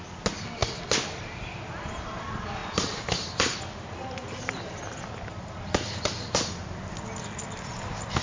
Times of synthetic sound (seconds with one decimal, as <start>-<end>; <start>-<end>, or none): none